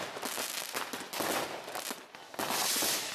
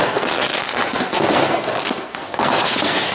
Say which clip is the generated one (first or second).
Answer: second